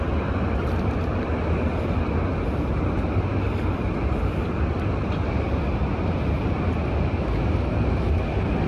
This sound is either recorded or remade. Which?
recorded